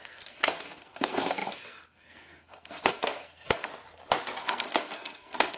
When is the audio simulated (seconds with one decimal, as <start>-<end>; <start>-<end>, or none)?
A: 0.0-3.7; 4.4-5.6